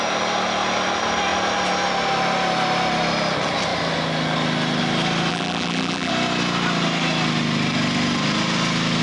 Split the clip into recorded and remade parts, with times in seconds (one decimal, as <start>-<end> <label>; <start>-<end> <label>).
0.0-5.3 recorded; 5.3-6.1 remade; 6.1-9.0 recorded